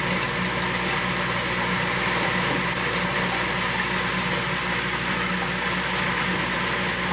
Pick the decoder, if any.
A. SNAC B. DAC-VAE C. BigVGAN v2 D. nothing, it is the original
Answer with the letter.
D